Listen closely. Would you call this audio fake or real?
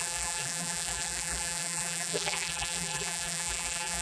fake